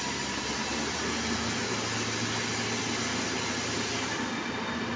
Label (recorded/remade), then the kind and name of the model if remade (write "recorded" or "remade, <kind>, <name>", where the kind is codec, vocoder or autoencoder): recorded